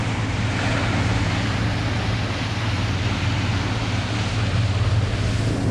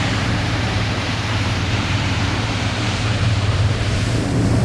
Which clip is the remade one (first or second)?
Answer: second